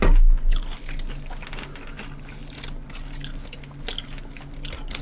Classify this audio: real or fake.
real